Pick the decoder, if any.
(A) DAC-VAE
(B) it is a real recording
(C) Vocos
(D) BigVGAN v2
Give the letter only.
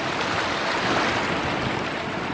B